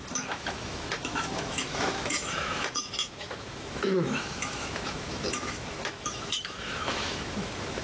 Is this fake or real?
fake